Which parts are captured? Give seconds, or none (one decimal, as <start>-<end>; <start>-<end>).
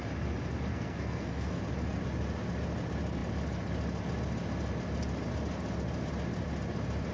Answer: 0.0-0.7; 1.6-7.1